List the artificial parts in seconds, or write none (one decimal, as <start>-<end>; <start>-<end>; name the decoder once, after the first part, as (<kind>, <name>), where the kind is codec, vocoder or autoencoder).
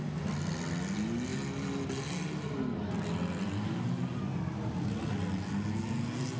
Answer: none